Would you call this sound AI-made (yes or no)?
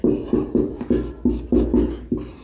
no